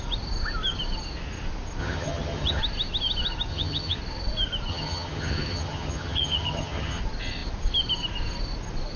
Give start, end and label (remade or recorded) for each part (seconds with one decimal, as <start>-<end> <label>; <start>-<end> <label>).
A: 0.0-1.8 recorded; 1.8-2.6 remade; 2.6-3.5 recorded; 3.5-4.0 remade; 4.0-4.7 recorded; 4.7-7.0 remade; 7.0-9.0 recorded